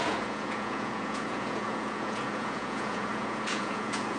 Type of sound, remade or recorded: remade